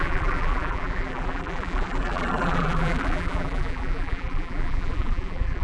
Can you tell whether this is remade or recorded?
remade